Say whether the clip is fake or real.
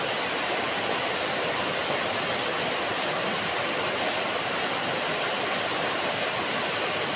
real